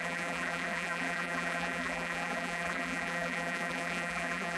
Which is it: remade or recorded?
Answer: remade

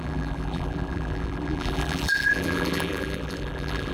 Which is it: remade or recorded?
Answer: remade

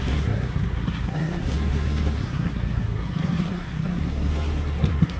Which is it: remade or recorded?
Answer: remade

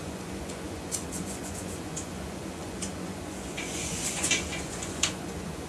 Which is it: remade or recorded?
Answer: remade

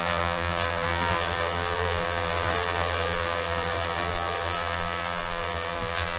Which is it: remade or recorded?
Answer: remade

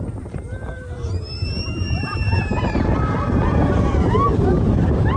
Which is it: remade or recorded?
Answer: remade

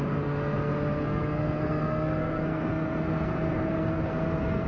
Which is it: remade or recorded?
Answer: remade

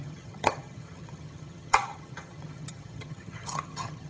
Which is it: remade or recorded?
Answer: remade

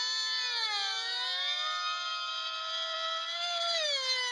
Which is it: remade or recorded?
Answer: recorded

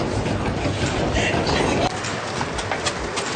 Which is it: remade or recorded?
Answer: recorded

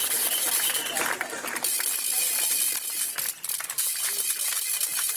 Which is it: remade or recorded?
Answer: recorded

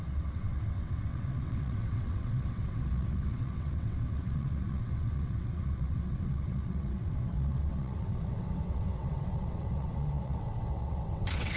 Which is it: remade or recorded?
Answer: remade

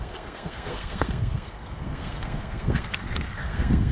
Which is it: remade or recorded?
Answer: remade